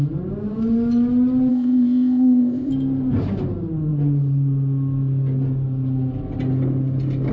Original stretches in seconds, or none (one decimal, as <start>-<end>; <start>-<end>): 0.0-1.5; 2.7-7.3